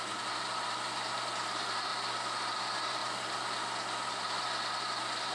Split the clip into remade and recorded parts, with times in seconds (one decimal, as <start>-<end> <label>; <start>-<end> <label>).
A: 0.0-1.9 remade; 1.9-2.5 recorded; 2.5-3.0 remade; 3.0-4.1 recorded; 4.1-5.3 remade